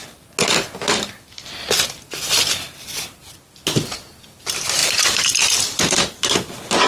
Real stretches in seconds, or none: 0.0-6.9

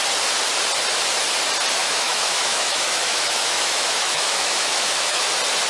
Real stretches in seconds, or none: 0.0-1.8; 5.2-5.7

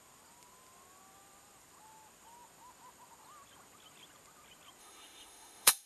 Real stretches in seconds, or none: 0.0-4.8

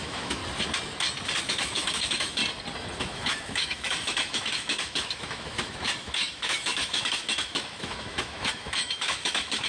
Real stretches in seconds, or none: 0.4-1.4; 2.4-3.0

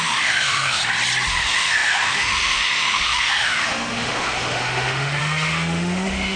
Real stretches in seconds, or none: 0.8-1.3